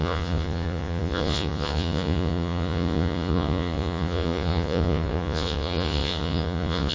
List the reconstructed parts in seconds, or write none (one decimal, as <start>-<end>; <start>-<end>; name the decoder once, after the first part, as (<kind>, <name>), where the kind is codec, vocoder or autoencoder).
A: 0.0-6.9 (vocoder, Vocos)